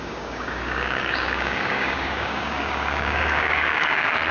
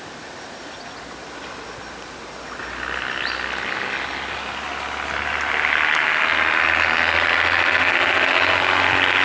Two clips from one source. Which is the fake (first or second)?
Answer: first